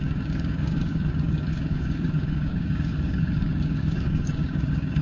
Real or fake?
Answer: fake